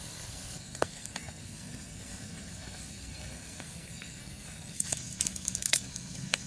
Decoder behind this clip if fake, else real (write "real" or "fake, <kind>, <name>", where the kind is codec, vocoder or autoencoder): fake, codec, SNAC